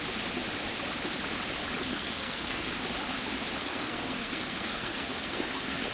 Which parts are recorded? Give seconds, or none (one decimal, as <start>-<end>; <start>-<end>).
0.0-1.9; 2.7-3.6